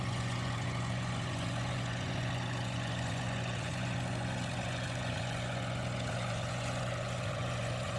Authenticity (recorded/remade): remade